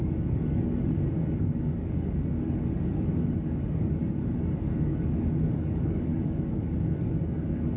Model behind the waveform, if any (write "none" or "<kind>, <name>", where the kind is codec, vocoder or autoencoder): codec, DAC